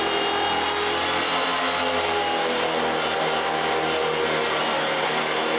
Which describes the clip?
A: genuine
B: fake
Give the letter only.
A